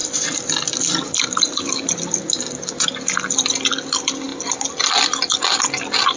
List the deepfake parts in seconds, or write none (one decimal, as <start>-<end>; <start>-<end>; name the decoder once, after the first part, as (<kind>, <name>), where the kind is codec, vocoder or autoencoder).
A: none